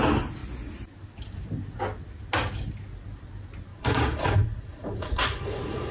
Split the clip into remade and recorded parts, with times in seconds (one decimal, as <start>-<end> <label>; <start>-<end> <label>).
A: 0.0-3.7 recorded; 3.7-5.9 remade